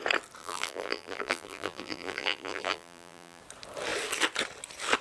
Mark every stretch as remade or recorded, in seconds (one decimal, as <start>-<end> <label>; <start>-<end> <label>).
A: 0.0-0.4 recorded; 0.4-3.4 remade; 3.4-5.0 recorded